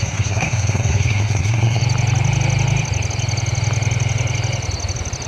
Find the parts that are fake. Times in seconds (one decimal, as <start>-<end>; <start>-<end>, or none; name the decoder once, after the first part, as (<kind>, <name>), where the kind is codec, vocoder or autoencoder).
0.0-1.8 (codec, SNAC)